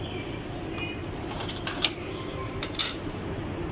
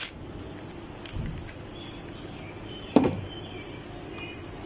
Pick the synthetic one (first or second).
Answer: first